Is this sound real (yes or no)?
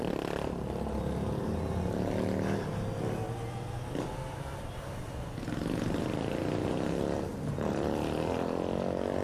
yes